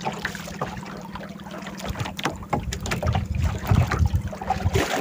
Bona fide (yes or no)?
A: yes